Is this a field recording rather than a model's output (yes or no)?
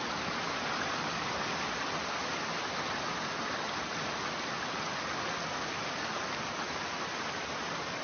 yes